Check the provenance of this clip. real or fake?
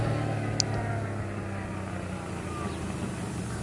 real